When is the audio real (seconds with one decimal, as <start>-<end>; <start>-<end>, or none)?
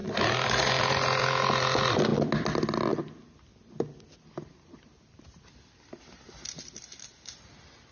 0.0-7.9